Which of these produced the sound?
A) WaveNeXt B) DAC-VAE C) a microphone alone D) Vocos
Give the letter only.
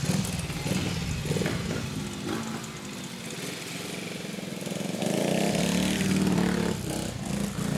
C